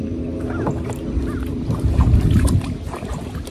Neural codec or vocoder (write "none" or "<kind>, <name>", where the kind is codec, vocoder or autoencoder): none